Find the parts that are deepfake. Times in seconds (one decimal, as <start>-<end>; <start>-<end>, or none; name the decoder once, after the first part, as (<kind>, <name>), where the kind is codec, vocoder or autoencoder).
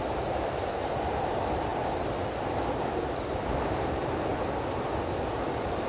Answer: none